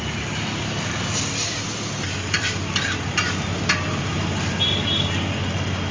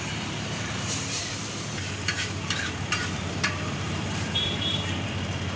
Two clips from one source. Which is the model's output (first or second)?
second